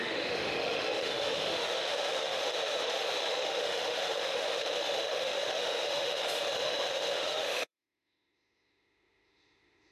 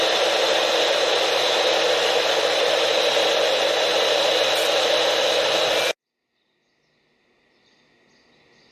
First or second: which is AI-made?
first